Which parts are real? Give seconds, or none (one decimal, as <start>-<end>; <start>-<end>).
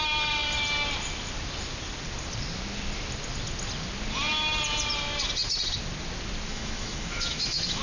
0.0-6.5